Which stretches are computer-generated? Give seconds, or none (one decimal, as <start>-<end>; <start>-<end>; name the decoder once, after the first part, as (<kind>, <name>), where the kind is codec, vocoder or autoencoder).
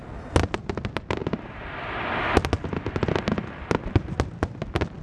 none